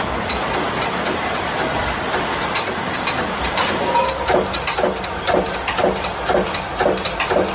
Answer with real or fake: real